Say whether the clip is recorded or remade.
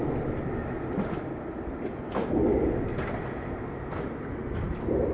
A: recorded